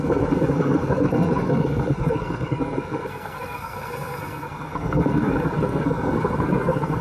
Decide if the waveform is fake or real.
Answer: fake